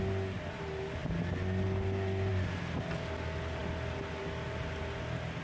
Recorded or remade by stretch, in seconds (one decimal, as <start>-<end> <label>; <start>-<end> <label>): 0.0-5.4 recorded